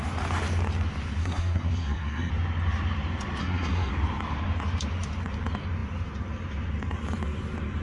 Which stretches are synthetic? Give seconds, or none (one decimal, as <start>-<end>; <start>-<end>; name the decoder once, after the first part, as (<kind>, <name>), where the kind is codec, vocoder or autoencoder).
1.2-2.3 (codec, SNAC); 3.4-3.9